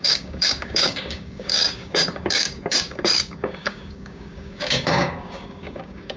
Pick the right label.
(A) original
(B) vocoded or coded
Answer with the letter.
B